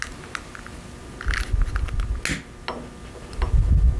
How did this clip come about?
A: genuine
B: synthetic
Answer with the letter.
A